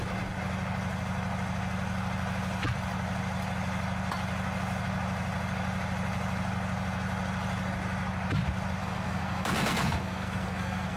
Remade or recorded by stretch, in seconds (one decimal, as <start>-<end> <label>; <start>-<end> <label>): 0.0-8.8 recorded; 8.8-11.0 remade

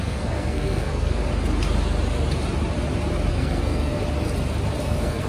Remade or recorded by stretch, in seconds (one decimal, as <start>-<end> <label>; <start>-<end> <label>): 0.0-1.2 remade; 1.2-3.3 recorded; 3.3-4.0 remade; 4.0-4.8 recorded; 4.8-5.3 remade

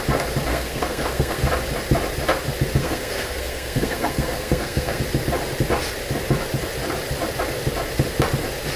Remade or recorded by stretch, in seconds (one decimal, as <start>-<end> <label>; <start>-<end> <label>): 0.0-0.5 recorded; 0.5-1.5 remade; 1.5-2.8 recorded; 2.8-5.0 remade; 5.0-8.8 recorded

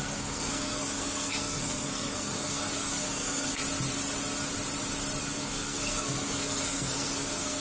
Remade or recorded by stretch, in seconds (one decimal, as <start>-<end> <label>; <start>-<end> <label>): 0.0-3.6 remade; 3.6-5.2 recorded; 5.2-7.6 remade

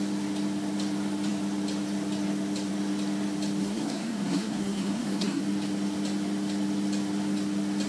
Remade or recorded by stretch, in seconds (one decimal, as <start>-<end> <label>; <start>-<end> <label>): 0.0-3.6 recorded; 3.6-5.4 remade; 5.4-7.9 recorded

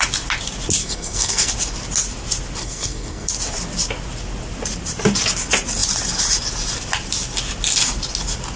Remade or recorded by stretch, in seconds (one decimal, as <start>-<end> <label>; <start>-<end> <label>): 0.0-0.8 recorded; 0.8-1.5 remade; 1.5-2.6 recorded; 2.6-3.3 remade; 3.3-8.6 recorded

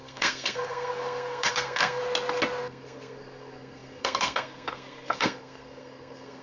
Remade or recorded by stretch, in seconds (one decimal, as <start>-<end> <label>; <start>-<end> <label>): 0.0-2.0 remade; 2.0-2.6 recorded; 2.6-6.4 remade